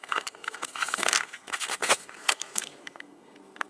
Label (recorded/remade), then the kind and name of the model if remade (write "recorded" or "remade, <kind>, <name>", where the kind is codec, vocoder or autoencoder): remade, codec, SNAC